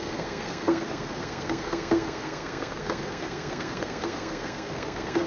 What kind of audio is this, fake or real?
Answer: fake